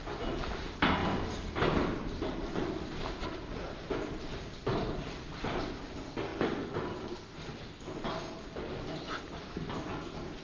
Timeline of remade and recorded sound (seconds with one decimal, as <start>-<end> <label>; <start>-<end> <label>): 0.0-1.0 recorded; 1.0-5.7 remade; 5.7-10.4 recorded